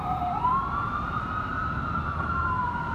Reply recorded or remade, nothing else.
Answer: remade